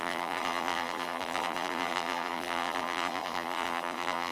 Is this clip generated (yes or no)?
yes